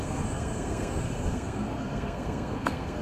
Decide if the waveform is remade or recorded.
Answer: remade